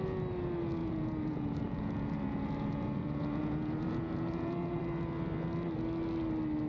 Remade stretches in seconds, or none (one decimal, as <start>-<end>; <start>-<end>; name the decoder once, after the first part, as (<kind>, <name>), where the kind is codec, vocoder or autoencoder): 0.8-4.8 (vocoder, Vocos)